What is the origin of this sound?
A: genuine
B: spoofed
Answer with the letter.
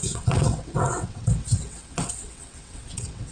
B